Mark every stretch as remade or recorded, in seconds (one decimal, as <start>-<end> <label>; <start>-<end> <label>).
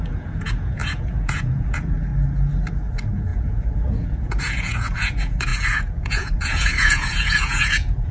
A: 0.0-2.1 remade; 2.1-2.7 recorded; 2.7-8.1 remade